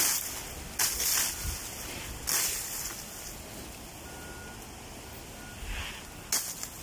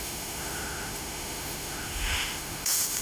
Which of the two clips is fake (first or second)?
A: second